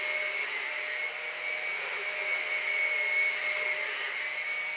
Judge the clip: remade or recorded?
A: recorded